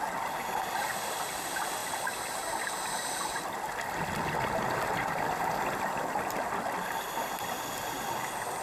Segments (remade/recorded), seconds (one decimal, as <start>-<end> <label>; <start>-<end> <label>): 0.0-8.6 recorded